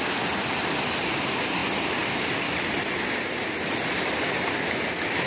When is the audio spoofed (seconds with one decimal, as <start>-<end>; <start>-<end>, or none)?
none